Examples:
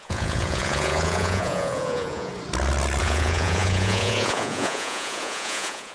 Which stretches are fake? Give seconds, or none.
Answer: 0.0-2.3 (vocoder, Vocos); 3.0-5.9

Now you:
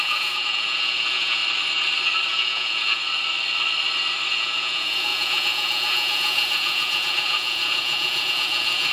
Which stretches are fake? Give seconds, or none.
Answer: 0.0-1.4 (vocoder, Vocos); 2.3-3.0; 4.3-8.9

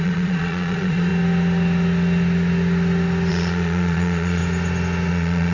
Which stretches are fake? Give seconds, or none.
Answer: 0.0-1.1 (vocoder, Vocos); 3.3-4.4; 5.1-5.5

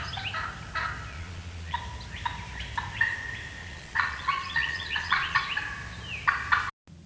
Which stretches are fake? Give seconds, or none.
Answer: 1.1-1.8 (vocoder, Vocos); 3.6-5.4

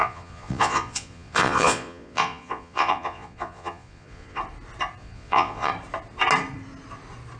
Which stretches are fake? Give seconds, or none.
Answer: 0.0-4.4 (vocoder, Vocos); 5.0-5.7